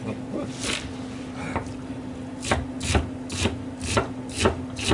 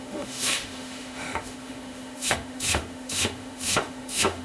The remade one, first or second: second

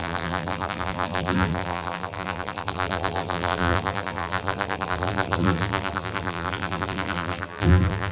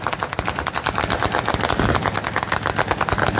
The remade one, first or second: first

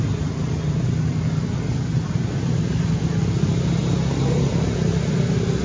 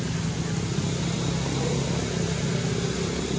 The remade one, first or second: first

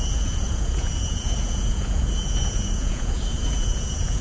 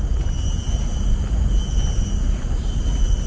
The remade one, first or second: first